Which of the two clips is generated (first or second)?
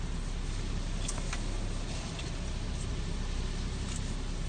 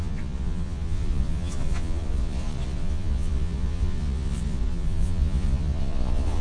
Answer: second